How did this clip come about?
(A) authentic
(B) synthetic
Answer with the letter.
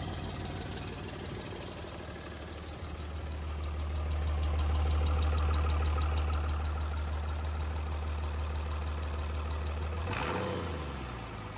A